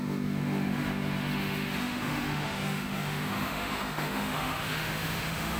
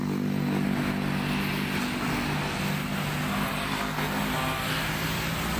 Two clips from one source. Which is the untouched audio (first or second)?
second